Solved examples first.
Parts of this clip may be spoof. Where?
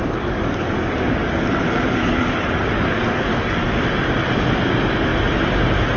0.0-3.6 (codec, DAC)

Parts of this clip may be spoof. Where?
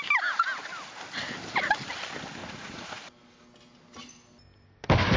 2.4-3.0 (vocoder, Vocos)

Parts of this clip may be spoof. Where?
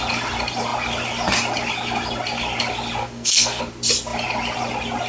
3.0-3.6 (codec, SNAC)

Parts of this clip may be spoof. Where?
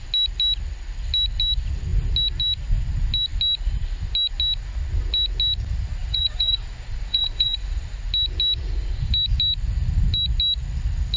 6.0-8.0 (vocoder, BigVGAN v2)